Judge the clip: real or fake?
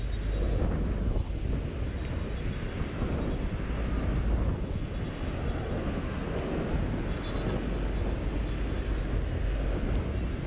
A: real